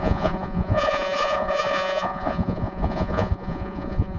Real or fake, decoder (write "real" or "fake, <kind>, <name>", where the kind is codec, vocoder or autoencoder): fake, vocoder, Vocos